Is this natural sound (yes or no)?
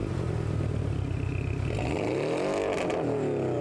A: yes